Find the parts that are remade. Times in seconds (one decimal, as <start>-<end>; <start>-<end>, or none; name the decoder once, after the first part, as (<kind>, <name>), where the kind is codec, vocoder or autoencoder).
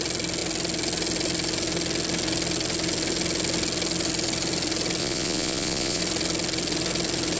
5.0-6.0 (vocoder, Vocos)